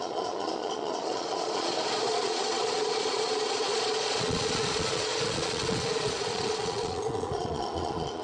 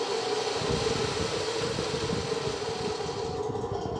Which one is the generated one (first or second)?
first